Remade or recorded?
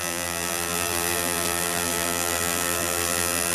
remade